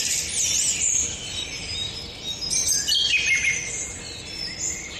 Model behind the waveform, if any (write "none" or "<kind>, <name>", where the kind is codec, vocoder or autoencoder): none